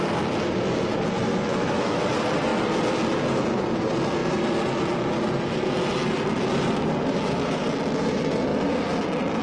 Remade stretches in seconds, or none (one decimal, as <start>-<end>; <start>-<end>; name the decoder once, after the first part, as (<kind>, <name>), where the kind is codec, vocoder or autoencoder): 1.3-2.0 (autoencoder, DAC-VAE)